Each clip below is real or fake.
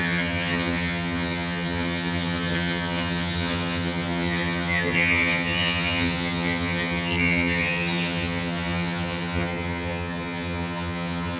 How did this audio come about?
fake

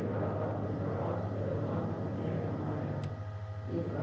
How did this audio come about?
real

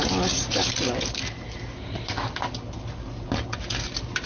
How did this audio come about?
real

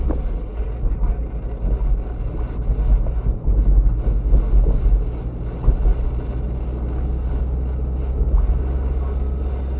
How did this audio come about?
real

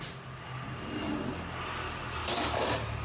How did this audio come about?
real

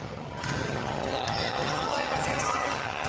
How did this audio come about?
fake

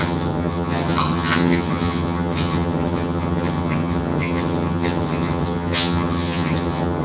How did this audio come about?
fake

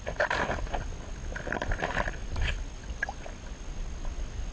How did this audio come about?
real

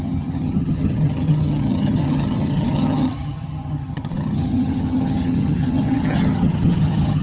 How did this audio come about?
fake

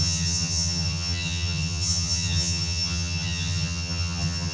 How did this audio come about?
fake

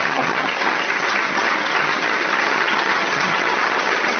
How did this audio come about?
fake